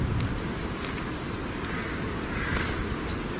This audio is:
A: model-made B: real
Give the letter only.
B